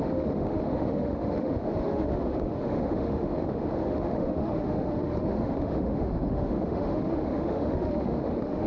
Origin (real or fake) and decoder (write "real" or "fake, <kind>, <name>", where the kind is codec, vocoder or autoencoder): fake, autoencoder, DAC-VAE